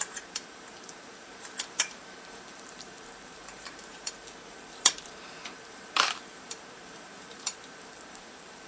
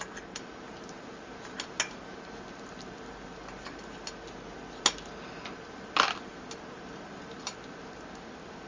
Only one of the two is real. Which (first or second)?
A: second